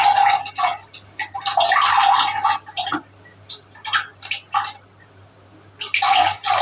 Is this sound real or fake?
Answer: real